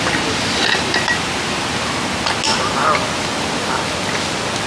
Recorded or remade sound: recorded